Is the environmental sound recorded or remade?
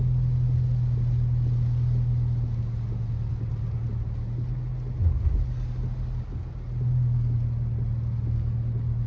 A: recorded